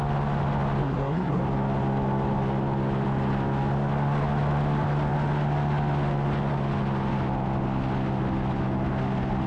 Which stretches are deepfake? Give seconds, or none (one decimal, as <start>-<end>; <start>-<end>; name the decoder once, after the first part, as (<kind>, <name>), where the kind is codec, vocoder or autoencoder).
0.8-1.4 (codec, SNAC)